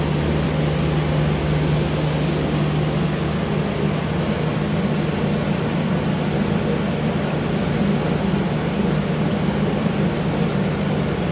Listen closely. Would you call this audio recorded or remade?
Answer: recorded